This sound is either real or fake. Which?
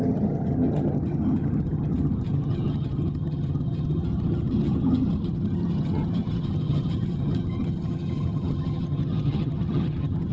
fake